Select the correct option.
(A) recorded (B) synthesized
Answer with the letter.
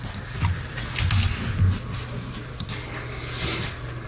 A